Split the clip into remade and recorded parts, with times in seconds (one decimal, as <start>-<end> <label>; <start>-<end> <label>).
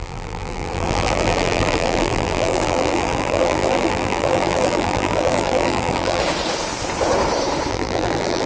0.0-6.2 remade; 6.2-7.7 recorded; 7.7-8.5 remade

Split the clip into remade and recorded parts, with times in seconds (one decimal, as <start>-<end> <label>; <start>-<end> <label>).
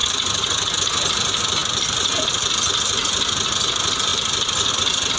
0.0-0.8 remade; 0.8-1.6 recorded; 1.6-2.2 remade; 2.2-4.1 recorded; 4.1-4.7 remade; 4.7-5.2 recorded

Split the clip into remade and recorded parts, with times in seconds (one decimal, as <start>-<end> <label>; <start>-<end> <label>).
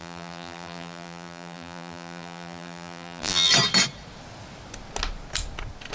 0.0-3.5 remade; 3.5-5.9 recorded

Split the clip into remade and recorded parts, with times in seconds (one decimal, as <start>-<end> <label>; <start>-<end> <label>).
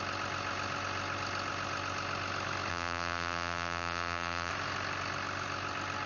0.0-2.7 recorded; 2.7-4.5 remade; 4.5-6.1 recorded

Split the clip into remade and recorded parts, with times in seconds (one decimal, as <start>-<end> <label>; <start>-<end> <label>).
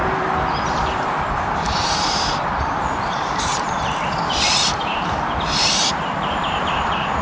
0.0-3.5 remade; 3.5-4.7 recorded; 4.7-7.2 remade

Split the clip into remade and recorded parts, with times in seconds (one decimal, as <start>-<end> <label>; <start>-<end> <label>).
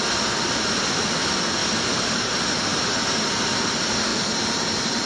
0.0-1.6 recorded; 1.6-2.3 remade; 2.3-2.7 recorded; 2.7-3.3 remade; 3.3-4.1 recorded; 4.1-5.1 remade